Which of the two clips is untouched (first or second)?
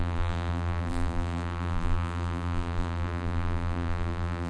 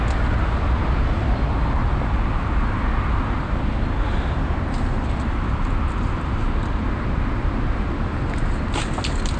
second